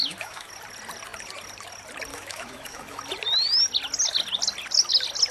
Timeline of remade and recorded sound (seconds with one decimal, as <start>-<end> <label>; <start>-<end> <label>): 0.0-0.5 remade; 0.5-2.1 recorded; 2.1-3.0 remade; 3.0-5.3 recorded